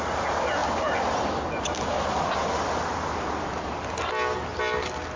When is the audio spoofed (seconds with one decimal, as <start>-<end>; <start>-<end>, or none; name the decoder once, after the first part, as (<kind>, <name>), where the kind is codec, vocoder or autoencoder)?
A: none